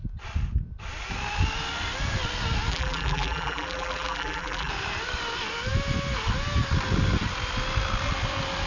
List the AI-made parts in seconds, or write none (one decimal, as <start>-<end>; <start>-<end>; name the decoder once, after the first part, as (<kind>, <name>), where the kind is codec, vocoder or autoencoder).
2.7-4.7 (vocoder, BigVGAN v2)